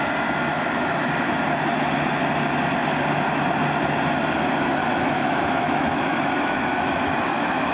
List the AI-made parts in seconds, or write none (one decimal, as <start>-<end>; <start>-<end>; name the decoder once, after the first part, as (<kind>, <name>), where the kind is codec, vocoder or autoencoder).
0.5-1.1 (autoencoder, DAC-VAE); 4.8-7.7